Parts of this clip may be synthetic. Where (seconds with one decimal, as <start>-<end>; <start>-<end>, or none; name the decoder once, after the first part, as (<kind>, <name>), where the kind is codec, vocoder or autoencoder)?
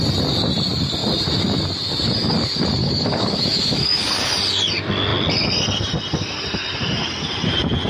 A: 2.8-4.2 (codec, DAC)